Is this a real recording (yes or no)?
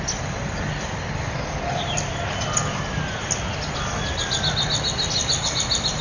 yes